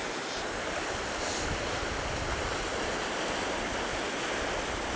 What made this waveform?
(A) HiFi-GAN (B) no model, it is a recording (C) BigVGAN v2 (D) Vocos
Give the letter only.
B